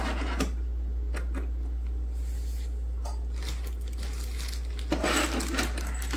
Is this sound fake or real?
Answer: real